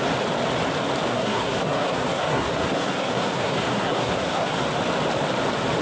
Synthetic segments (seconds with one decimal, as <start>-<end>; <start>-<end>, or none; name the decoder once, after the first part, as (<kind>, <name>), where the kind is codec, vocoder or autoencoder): 1.1-4.6 (codec, SNAC)